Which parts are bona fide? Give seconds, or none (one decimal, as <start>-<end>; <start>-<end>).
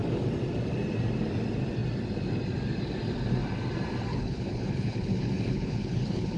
0.0-4.1